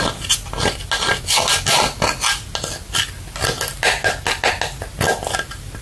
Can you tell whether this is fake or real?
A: real